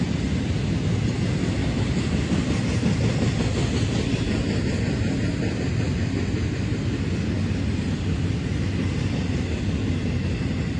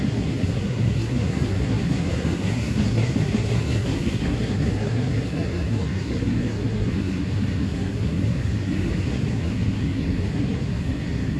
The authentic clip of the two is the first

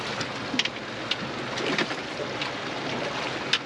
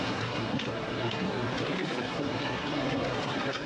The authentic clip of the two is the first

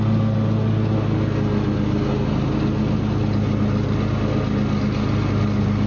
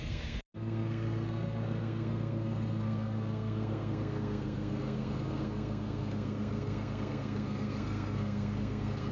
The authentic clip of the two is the first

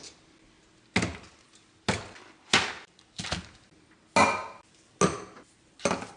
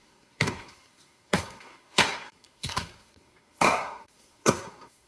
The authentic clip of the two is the first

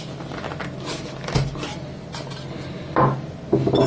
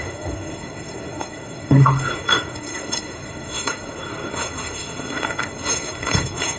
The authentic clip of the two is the first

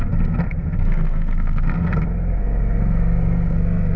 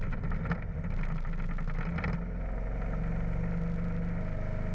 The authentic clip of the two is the second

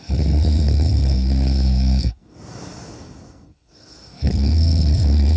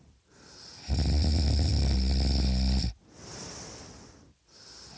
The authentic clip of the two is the second